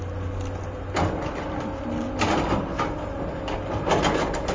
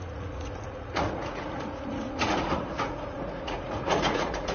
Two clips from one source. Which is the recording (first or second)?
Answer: first